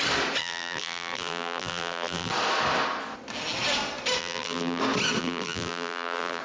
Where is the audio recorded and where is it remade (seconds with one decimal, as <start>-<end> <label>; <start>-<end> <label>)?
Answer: 0.0-0.4 recorded; 0.4-2.3 remade; 2.3-4.2 recorded; 4.2-4.8 remade; 4.8-5.2 recorded; 5.2-6.4 remade